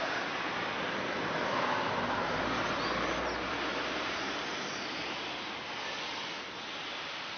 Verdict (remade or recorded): recorded